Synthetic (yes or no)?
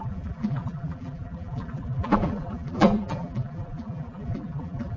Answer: yes